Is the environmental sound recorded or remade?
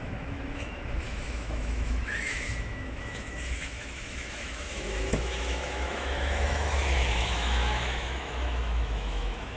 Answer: remade